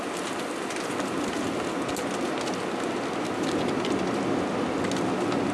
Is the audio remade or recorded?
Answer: recorded